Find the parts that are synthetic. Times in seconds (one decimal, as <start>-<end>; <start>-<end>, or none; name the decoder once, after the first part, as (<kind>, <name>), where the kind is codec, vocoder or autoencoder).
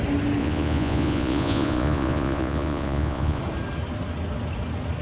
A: 0.4-3.4 (vocoder, Vocos)